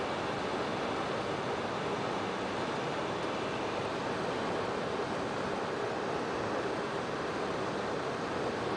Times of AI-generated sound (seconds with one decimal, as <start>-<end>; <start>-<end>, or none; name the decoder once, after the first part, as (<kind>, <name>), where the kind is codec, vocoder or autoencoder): none